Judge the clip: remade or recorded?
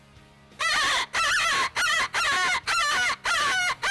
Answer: recorded